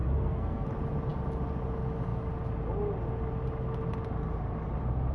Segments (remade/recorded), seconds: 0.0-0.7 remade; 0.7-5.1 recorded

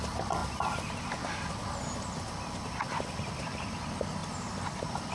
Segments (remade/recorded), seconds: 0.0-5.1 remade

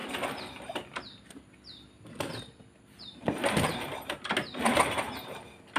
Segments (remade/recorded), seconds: 0.0-5.8 recorded